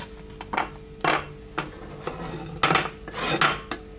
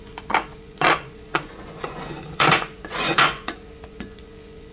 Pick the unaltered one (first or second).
first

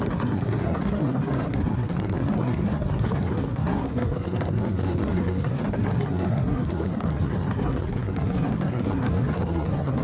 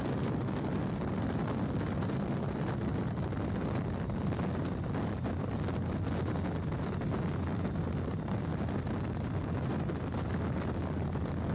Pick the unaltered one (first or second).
second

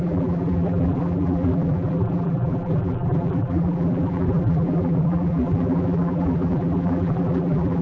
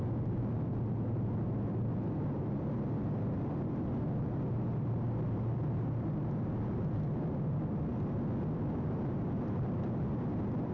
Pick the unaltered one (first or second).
second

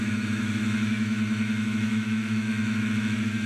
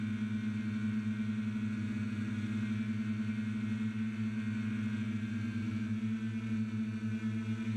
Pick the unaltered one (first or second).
second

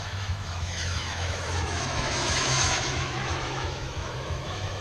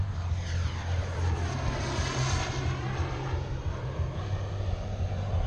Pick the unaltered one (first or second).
second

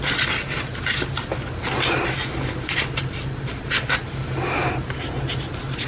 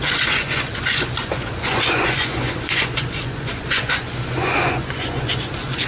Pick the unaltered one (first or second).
first